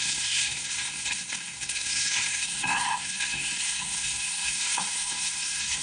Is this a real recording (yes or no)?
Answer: no